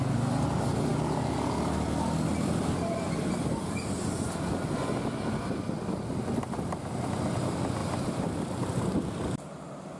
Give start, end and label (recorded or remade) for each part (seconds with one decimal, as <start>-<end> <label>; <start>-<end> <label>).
0.0-10.0 recorded